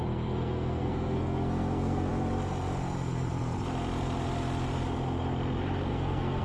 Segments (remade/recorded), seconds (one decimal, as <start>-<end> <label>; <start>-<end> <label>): 0.0-2.1 remade; 2.1-5.9 recorded; 5.9-6.4 remade